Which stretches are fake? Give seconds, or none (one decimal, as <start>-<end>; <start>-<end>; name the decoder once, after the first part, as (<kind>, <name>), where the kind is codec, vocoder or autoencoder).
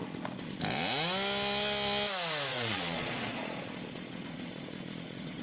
0.0-0.6 (vocoder, Vocos); 2.5-5.4